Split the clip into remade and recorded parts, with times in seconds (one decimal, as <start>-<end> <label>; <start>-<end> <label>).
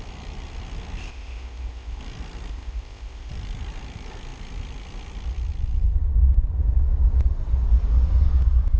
0.0-1.1 recorded; 1.1-2.0 remade; 2.0-2.5 recorded; 2.5-3.3 remade; 3.3-8.8 recorded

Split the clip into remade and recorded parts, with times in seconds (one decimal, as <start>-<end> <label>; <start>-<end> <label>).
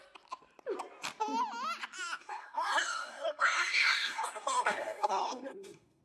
0.0-2.2 recorded; 2.2-6.0 remade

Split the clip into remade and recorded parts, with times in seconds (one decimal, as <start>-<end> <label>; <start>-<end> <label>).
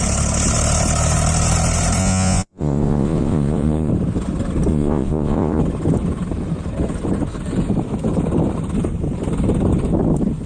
0.0-2.0 recorded; 2.0-3.9 remade; 3.9-4.7 recorded; 4.7-5.6 remade; 5.6-10.5 recorded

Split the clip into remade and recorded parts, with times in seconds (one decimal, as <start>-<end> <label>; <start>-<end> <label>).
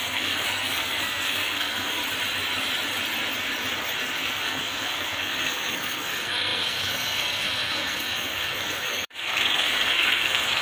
0.0-2.0 remade; 2.0-4.1 recorded; 4.1-10.6 remade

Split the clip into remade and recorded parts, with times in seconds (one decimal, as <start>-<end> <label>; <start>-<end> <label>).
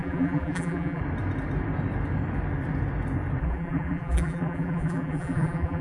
0.0-1.0 remade; 1.0-3.4 recorded; 3.4-5.8 remade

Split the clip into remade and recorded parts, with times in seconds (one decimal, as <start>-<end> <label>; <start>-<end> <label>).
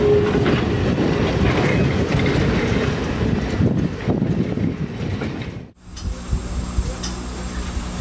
0.0-5.1 recorded; 5.1-5.7 remade; 5.7-8.0 recorded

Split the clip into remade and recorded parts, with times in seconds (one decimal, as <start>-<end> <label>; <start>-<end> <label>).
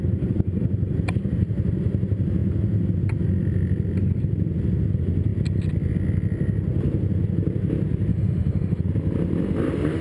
0.0-8.1 recorded; 8.1-8.8 remade; 8.8-10.0 recorded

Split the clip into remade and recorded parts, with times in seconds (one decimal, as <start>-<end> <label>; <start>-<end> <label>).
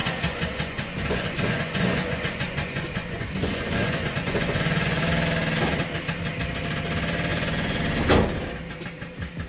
0.0-5.0 remade; 5.0-7.3 recorded; 7.3-7.8 remade; 7.8-9.5 recorded